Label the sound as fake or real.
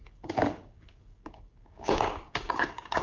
fake